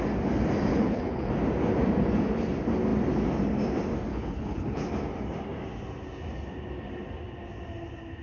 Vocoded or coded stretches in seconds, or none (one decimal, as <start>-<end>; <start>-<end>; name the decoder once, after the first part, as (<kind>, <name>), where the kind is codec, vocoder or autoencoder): 0.7-1.3 (codec, HILCodec); 4.1-4.9